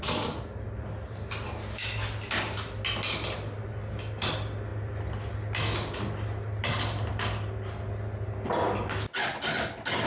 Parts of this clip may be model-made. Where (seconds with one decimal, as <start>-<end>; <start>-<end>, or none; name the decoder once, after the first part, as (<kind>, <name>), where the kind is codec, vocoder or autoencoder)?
none